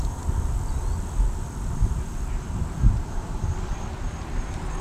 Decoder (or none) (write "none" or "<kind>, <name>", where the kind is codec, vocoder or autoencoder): none